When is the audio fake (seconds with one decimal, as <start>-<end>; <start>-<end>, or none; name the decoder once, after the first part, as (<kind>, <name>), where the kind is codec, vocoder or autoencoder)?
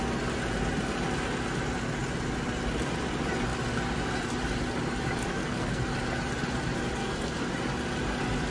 5.2-5.9 (codec, SNAC); 7.0-7.5